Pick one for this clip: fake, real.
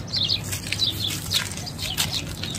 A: real